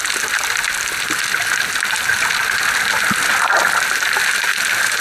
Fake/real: real